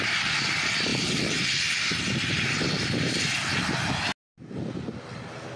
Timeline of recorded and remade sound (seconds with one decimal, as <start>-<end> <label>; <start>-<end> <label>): 0.0-5.6 recorded